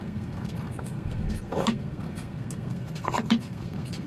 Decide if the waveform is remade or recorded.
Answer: remade